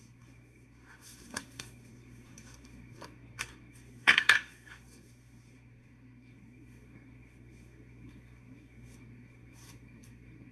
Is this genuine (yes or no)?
no